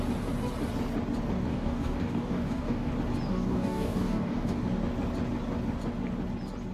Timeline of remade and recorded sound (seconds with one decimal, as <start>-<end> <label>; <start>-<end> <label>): 0.0-1.5 recorded; 1.5-2.9 remade; 2.9-3.3 recorded; 3.3-4.6 remade; 4.6-6.7 recorded

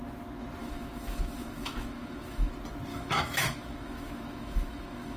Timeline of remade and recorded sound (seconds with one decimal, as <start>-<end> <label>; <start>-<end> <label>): 0.0-0.6 recorded; 0.6-2.5 remade; 2.5-2.9 recorded; 2.9-5.2 remade